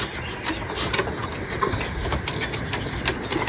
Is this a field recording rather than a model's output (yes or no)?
no